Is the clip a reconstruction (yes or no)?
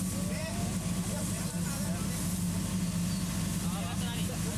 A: no